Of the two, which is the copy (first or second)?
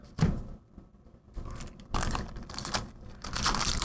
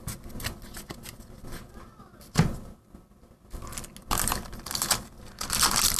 first